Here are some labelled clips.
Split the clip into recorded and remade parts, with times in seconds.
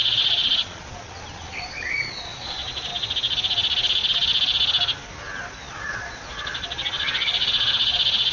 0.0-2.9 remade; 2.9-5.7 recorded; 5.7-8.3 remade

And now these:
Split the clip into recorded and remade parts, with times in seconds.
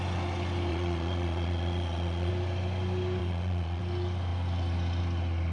0.0-0.7 recorded; 0.7-2.3 remade; 2.3-3.2 recorded; 3.2-3.8 remade; 3.8-5.5 recorded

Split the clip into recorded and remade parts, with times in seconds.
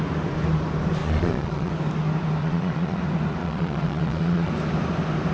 0.0-1.0 recorded; 1.0-1.7 remade; 1.7-2.4 recorded; 2.4-3.0 remade; 3.0-3.4 recorded; 3.4-4.5 remade; 4.5-5.3 recorded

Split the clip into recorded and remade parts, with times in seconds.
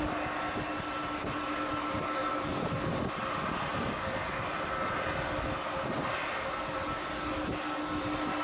0.0-8.4 recorded